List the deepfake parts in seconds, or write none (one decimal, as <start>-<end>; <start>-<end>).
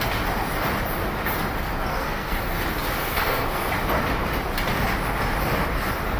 1.9-2.6; 3.0-3.7